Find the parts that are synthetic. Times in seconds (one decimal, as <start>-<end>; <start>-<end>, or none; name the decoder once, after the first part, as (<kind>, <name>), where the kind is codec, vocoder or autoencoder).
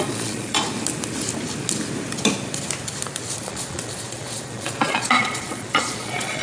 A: 0.0-0.6 (vocoder, Vocos); 3.4-6.4